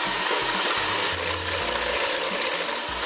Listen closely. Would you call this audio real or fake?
real